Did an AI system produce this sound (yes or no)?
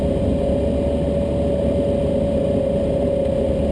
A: no